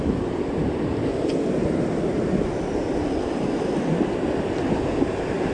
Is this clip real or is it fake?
real